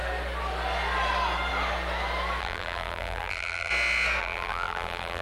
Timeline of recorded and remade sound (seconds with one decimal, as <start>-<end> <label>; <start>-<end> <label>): 0.0-2.4 recorded; 2.4-3.7 remade; 3.7-4.2 recorded; 4.2-5.2 remade